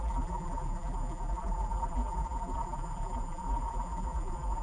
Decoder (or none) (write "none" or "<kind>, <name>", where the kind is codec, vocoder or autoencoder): vocoder, BigVGAN v2